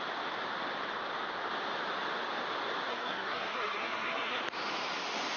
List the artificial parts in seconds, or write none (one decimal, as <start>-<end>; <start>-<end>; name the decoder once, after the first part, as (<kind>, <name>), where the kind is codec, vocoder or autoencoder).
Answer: 2.9-4.4 (codec, SNAC)